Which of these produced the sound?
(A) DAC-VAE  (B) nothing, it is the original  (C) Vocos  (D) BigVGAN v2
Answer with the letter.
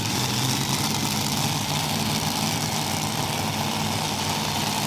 B